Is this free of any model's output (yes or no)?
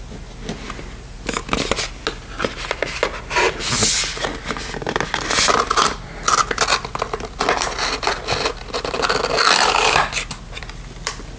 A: yes